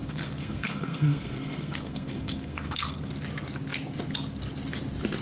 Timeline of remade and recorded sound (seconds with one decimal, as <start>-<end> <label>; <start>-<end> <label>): 0.0-3.1 remade; 3.1-5.2 recorded